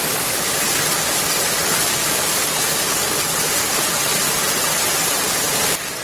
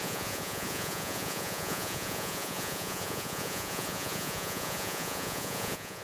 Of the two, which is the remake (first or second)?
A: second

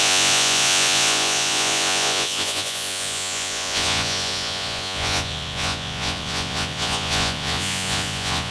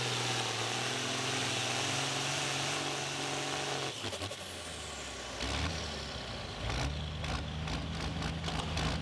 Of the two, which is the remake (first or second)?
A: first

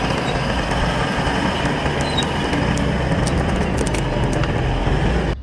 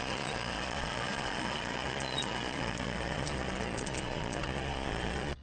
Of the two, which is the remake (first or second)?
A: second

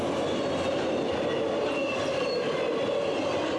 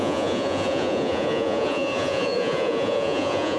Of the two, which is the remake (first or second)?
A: second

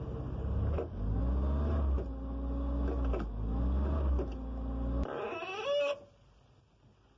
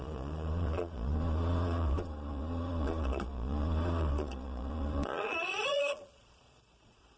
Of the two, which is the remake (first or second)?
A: second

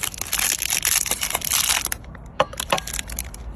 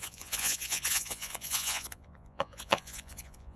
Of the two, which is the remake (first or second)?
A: second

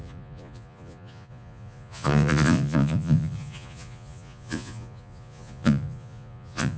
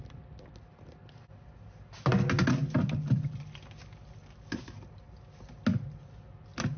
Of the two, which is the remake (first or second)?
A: first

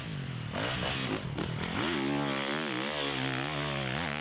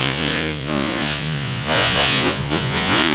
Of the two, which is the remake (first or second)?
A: second